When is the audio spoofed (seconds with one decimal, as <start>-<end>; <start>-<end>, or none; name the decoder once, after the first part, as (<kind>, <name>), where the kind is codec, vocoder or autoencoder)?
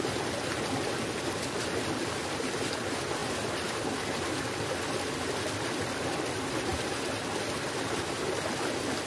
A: none